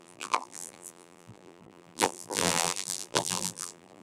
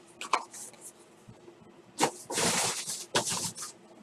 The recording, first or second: second